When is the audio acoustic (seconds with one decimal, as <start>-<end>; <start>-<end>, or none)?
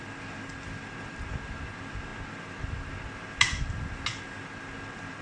0.0-5.2